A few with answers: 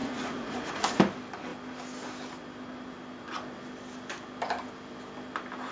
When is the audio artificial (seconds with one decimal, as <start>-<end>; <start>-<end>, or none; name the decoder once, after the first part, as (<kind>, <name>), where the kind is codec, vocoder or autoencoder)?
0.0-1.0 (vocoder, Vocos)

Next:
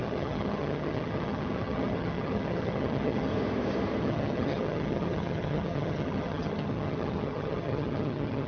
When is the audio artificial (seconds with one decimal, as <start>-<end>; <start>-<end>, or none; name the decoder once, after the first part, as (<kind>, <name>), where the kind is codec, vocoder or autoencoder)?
0.0-3.3 (vocoder, HiFi-GAN); 4.0-8.5

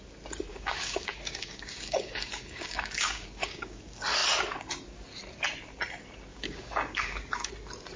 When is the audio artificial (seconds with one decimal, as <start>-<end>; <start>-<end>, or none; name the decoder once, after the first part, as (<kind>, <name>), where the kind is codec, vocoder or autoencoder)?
0.5-3.8 (codec, DAC); 6.3-7.5